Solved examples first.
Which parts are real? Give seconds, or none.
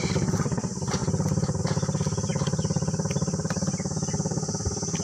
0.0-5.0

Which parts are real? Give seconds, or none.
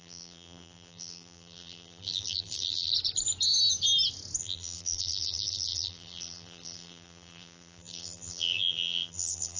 2.9-4.4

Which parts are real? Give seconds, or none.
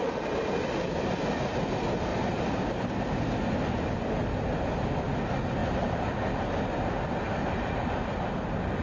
0.0-2.1; 3.4-5.6; 6.1-8.8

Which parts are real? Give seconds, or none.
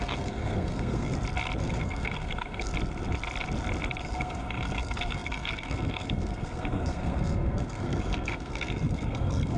1.1-1.6; 2.7-4.0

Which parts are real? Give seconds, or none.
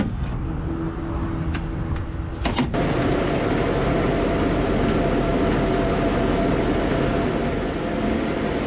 0.0-8.7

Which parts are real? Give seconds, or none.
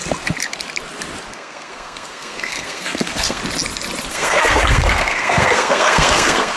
0.0-1.3; 3.4-4.1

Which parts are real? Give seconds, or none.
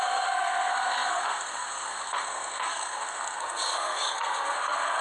none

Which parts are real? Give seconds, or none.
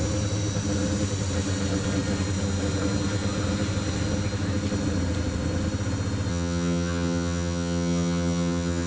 0.0-6.3